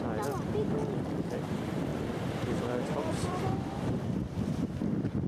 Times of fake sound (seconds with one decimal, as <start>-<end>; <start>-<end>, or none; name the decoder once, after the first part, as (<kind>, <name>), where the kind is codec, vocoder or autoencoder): 1.9-5.3 (vocoder, BigVGAN v2)